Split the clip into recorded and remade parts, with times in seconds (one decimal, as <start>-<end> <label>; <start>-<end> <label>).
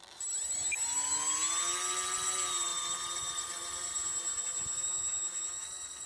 0.0-6.1 recorded